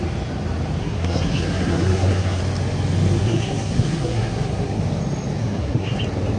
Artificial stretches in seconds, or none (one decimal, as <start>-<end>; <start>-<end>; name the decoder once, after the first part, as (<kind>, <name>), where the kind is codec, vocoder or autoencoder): 0.8-2.4 (codec, SNAC); 3.2-4.8; 5.4-6.0